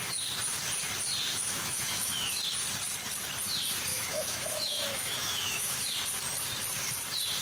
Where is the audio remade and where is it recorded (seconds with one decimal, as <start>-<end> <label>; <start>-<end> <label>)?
0.0-1.3 recorded; 1.3-2.3 remade; 2.3-3.9 recorded; 3.9-6.0 remade; 6.0-7.4 recorded